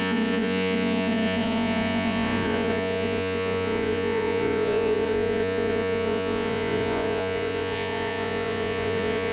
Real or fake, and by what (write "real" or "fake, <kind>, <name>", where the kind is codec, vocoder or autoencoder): fake, vocoder, Vocos